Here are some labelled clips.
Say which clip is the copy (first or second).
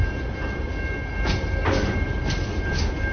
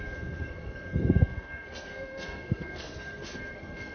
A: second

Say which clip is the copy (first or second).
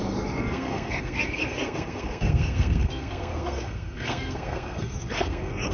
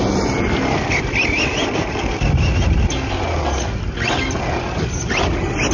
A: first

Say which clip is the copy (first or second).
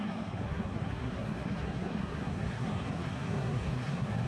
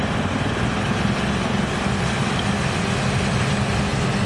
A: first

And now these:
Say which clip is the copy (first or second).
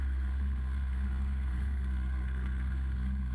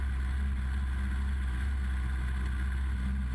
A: first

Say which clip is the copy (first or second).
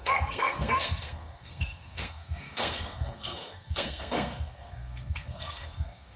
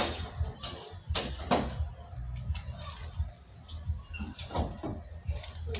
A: first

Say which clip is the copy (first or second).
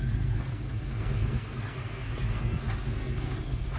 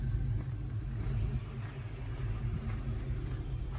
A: first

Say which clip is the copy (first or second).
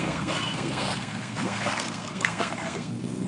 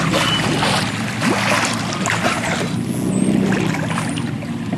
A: first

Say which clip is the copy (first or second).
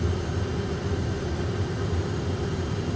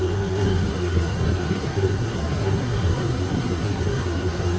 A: second